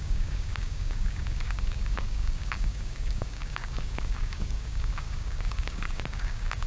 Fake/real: fake